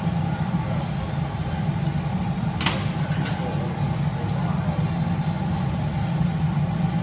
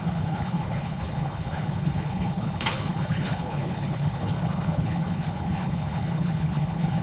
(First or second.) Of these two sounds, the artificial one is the second